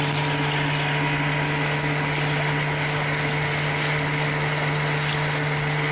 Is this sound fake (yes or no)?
no